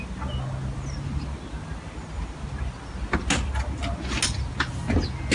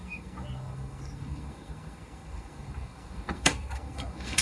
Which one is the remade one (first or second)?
second